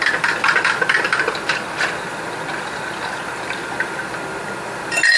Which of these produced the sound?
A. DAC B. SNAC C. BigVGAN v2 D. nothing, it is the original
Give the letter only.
C